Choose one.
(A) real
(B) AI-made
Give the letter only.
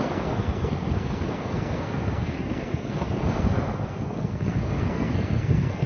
B